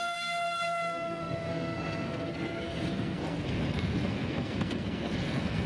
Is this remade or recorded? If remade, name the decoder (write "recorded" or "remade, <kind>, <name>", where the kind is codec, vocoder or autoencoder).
remade, codec, SNAC